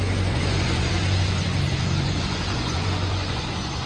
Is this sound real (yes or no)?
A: no